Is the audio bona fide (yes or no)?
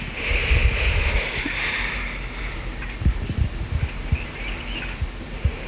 yes